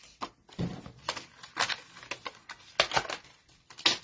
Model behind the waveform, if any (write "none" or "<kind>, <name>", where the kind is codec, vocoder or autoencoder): none